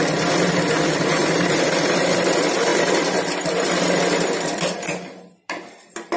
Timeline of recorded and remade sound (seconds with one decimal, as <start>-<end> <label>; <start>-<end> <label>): 0.0-1.2 recorded; 1.2-1.7 remade; 1.7-6.2 recorded